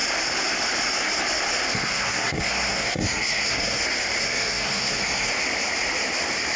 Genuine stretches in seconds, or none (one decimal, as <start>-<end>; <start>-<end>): 0.0-1.7; 3.8-4.2; 5.3-6.6